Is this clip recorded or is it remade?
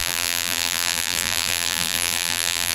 remade